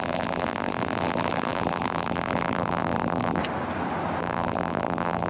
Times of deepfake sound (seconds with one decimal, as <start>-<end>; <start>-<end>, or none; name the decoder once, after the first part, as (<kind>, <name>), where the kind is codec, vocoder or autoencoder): 0.0-3.4 (vocoder, BigVGAN v2); 4.2-5.3